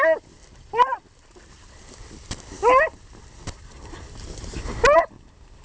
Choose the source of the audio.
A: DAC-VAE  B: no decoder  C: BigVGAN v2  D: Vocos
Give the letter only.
B